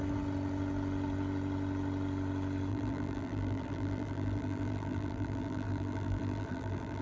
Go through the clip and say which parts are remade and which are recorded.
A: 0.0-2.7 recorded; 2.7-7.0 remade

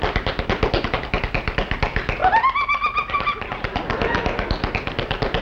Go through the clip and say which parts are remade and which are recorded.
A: 0.0-5.4 recorded

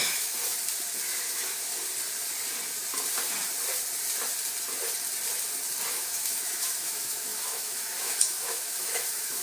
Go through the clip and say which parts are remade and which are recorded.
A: 0.0-0.4 remade; 0.4-1.1 recorded; 1.1-1.7 remade; 1.7-5.9 recorded; 5.9-9.4 remade

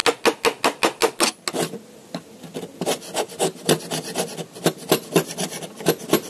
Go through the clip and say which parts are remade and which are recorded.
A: 0.0-6.3 recorded

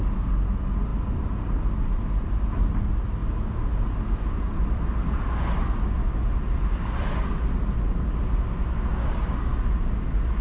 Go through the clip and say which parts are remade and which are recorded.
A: 0.0-10.4 recorded

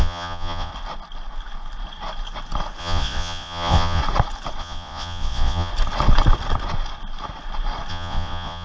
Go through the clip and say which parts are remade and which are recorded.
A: 0.0-0.7 remade; 0.7-2.8 recorded; 2.8-4.0 remade; 4.0-4.6 recorded; 4.6-5.7 remade; 5.7-7.9 recorded; 7.9-8.6 remade